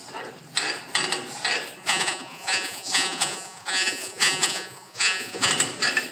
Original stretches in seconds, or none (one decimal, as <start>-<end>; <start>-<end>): 0.0-1.8; 5.5-6.1